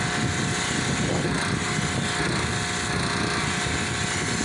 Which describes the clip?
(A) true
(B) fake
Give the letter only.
A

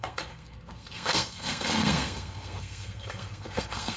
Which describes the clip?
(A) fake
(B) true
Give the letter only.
A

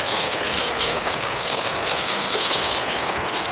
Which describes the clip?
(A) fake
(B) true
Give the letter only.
A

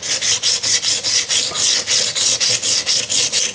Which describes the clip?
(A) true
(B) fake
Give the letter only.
A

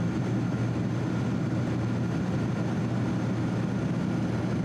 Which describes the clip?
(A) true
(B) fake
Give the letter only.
A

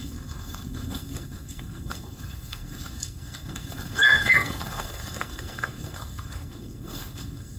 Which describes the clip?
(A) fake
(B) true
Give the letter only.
A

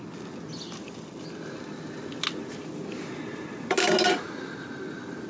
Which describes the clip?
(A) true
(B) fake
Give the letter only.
A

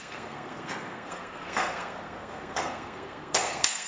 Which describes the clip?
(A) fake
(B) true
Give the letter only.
A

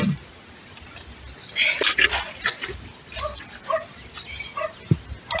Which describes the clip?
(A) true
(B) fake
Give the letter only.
A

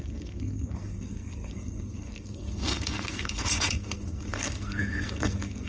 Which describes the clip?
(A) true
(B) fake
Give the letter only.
B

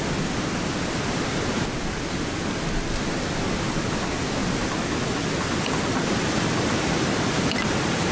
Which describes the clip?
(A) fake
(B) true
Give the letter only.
B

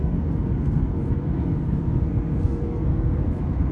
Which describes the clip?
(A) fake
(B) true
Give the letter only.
A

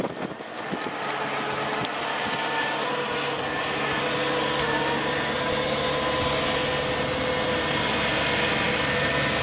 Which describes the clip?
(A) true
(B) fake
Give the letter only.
A